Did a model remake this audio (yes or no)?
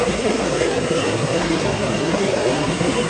yes